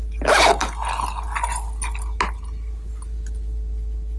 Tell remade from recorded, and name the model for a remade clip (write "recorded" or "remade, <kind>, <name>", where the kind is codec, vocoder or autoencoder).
recorded